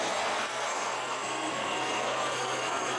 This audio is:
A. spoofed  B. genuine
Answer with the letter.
A